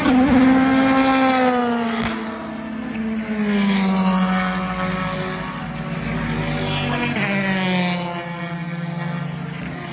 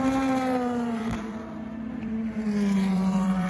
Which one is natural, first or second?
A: first